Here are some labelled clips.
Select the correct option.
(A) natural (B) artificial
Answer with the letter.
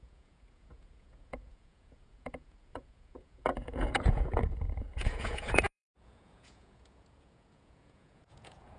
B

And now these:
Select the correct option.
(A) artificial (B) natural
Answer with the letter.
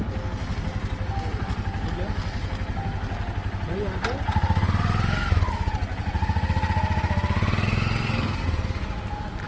B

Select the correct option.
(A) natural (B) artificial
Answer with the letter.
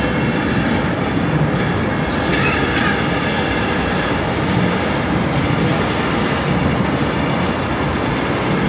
A